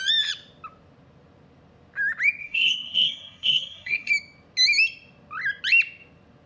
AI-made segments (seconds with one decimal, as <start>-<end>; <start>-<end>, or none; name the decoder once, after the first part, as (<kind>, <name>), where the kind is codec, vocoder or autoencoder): 2.4-4.1 (codec, SNAC)

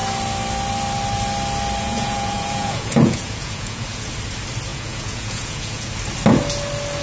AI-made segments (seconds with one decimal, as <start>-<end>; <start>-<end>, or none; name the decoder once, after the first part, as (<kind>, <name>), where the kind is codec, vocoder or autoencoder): 1.8-4.1 (vocoder, Vocos); 4.7-5.9

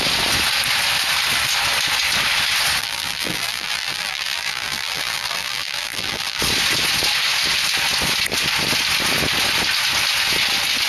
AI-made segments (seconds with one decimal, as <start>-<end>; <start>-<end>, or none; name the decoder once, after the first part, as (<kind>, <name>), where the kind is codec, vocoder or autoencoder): 2.8-6.4 (vocoder, BigVGAN v2)

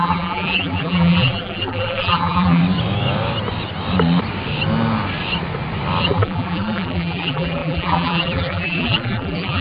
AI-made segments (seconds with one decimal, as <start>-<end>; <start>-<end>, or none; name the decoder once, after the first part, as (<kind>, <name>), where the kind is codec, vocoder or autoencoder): 0.0-2.6 (vocoder, BigVGAN v2); 6.0-9.6